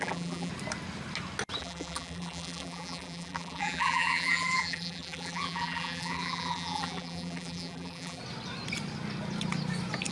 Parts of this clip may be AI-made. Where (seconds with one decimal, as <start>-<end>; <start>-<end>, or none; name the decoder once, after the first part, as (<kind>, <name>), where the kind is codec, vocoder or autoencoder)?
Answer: 0.0-0.5 (vocoder, BigVGAN v2); 1.6-8.2